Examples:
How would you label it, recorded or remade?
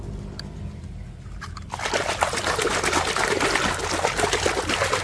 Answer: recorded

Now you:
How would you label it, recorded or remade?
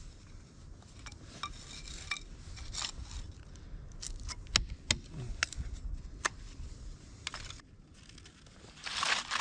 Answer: recorded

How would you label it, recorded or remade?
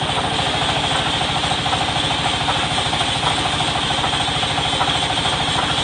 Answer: recorded